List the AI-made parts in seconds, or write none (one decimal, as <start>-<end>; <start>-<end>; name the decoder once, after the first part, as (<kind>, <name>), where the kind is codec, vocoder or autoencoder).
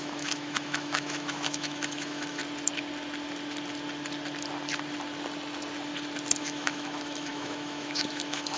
0.0-2.4 (autoencoder, DAC-VAE); 6.4-8.6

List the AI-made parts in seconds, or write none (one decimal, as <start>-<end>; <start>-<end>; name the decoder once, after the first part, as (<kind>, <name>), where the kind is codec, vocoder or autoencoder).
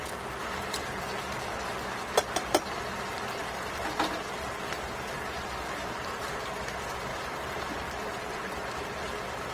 5.8-6.5 (vocoder, BigVGAN v2); 7.1-7.7